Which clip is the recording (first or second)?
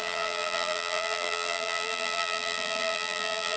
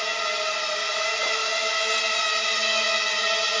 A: second